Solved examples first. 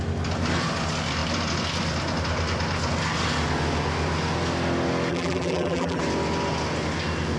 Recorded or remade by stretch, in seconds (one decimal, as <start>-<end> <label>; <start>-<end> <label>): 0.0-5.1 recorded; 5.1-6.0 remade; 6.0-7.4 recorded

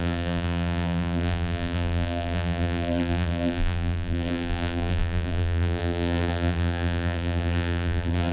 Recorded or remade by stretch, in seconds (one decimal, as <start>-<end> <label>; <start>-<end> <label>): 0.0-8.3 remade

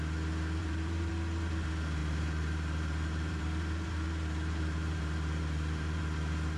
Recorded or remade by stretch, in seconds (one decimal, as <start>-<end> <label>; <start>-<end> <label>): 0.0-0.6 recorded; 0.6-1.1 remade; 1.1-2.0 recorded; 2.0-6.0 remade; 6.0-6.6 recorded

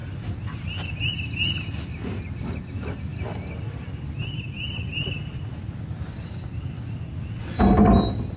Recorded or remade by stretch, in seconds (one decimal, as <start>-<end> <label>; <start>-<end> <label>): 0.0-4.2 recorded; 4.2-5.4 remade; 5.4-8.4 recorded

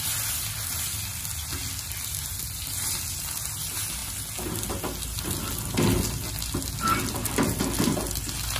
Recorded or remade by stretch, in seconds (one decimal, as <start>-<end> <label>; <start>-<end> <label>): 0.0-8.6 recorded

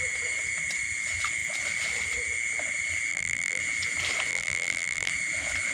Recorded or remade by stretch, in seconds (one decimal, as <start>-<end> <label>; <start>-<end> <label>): 0.0-3.1 recorded; 3.1-3.6 remade; 3.6-4.3 recorded; 4.3-5.1 remade; 5.1-5.7 recorded

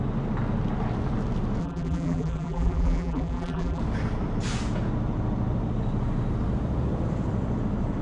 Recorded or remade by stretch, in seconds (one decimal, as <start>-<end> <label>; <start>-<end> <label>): 0.0-1.6 recorded; 1.6-3.8 remade; 3.8-8.0 recorded

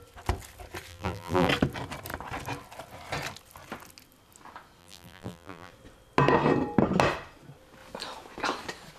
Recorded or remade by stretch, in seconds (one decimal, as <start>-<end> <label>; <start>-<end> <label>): 0.0-0.9 recorded; 0.9-1.5 remade; 1.5-4.8 recorded; 4.8-5.7 remade; 5.7-9.0 recorded